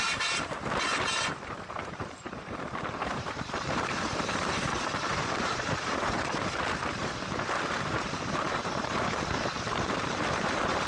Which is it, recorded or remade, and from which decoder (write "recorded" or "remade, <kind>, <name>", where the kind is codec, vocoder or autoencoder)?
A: remade, vocoder, BigVGAN v2